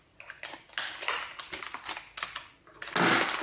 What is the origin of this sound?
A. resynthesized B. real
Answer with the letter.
B